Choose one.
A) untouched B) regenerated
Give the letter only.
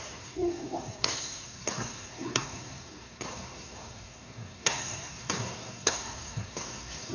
B